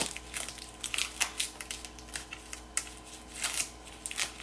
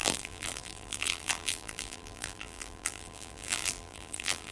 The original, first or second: first